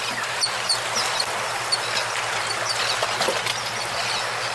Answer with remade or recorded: recorded